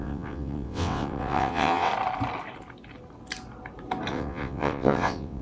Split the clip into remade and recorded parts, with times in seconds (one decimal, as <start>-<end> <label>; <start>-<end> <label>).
0.0-1.9 remade; 1.9-4.1 recorded; 4.1-5.4 remade